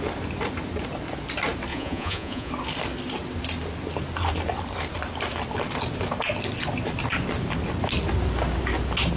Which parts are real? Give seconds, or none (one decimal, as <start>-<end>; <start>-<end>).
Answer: 0.0-1.7; 2.5-9.2